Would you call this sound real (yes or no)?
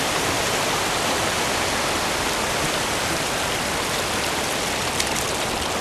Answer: yes